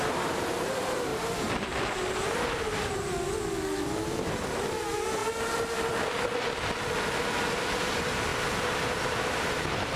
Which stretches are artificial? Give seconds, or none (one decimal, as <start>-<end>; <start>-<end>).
0.0-3.1; 3.8-5.2; 7.6-10.0